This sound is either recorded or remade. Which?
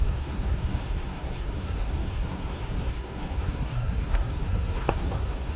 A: remade